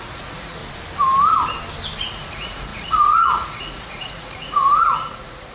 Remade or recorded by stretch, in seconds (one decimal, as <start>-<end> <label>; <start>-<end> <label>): 0.0-0.6 remade; 0.6-2.0 recorded; 2.0-5.5 remade